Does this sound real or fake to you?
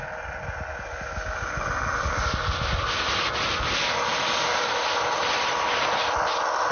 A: real